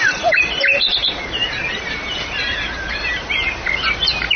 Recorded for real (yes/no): no